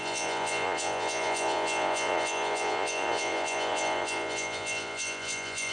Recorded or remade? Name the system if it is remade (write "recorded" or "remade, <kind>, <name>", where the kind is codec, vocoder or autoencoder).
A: remade, vocoder, Vocos